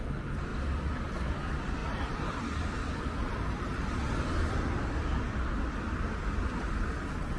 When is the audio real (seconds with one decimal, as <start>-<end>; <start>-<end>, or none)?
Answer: 0.0-7.4